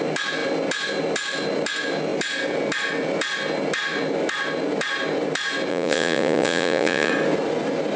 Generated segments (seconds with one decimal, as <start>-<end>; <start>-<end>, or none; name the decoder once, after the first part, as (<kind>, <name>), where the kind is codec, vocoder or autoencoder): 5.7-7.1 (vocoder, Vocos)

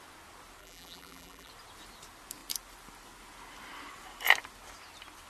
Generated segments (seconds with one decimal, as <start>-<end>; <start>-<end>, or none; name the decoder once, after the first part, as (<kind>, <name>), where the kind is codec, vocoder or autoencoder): 0.6-1.5 (vocoder, BigVGAN v2)

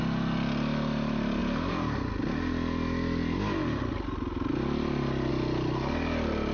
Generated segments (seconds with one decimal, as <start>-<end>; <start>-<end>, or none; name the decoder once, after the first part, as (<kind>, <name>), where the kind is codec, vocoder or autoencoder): none

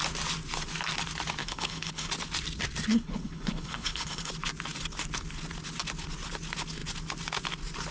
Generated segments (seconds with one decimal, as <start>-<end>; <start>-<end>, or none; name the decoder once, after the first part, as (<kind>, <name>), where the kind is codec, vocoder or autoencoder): 1.4-2.1 (codec, HILCodec); 2.9-4.3